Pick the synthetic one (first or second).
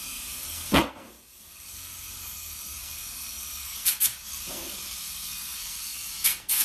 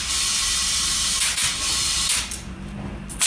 first